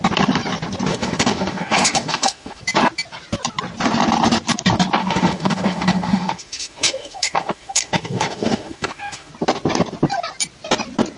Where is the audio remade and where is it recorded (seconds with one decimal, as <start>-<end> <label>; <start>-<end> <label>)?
0.0-0.9 recorded; 0.9-2.6 remade; 2.6-5.0 recorded; 5.0-9.3 remade; 9.3-11.2 recorded